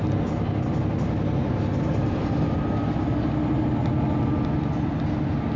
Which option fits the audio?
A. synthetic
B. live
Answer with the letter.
B